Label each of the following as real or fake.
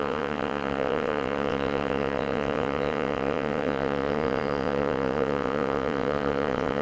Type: fake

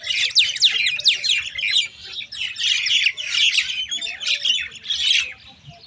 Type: real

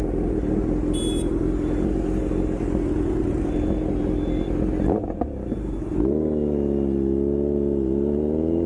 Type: real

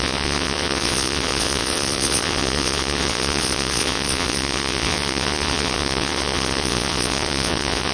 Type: fake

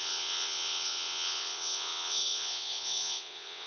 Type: fake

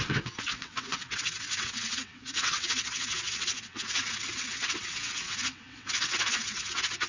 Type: fake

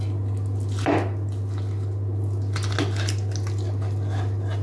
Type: real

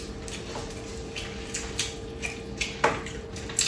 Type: real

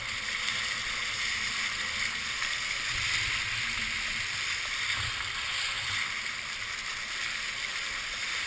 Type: real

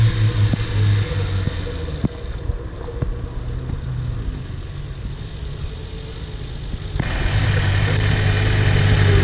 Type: real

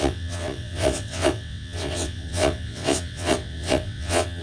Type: fake